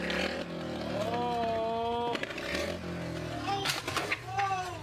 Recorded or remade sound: recorded